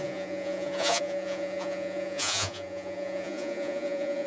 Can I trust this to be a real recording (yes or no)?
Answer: no